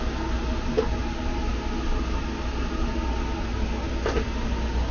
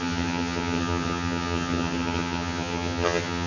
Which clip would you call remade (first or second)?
second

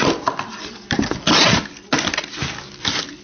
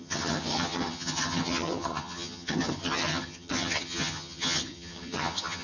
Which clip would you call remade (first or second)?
second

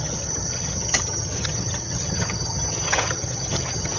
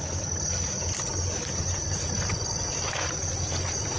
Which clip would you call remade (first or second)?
first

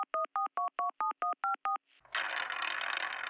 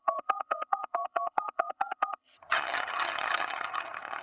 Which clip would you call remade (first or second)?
second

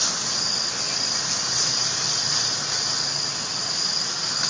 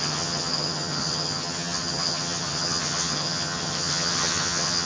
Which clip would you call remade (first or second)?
second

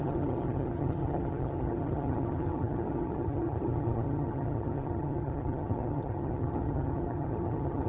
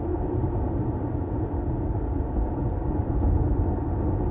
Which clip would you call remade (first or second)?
first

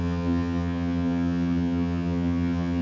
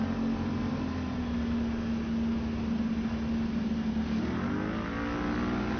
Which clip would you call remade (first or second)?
first